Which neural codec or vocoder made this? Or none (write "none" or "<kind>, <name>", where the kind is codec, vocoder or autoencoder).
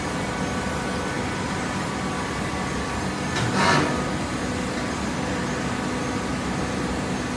none